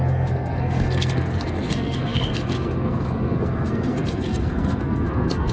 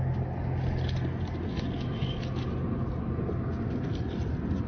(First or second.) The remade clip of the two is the first